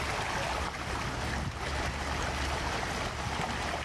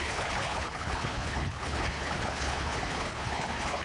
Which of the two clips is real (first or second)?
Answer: first